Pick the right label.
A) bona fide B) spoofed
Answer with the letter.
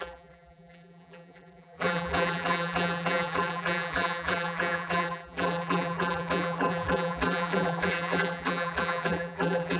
B